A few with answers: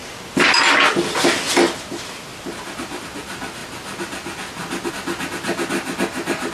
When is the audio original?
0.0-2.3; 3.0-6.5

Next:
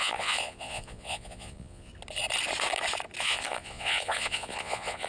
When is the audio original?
1.9-3.2